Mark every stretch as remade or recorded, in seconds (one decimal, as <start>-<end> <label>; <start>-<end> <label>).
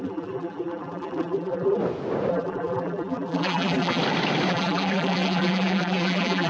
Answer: 0.0-1.8 remade; 1.8-2.3 recorded; 2.3-4.0 remade; 4.0-4.5 recorded; 4.5-6.5 remade